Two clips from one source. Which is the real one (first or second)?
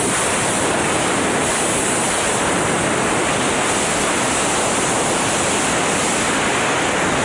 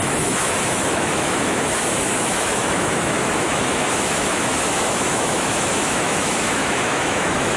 first